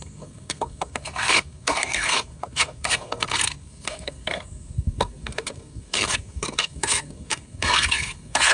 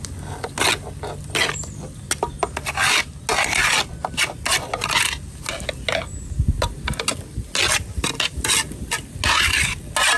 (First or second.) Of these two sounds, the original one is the second